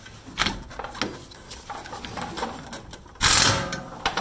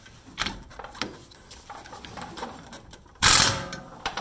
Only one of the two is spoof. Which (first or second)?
second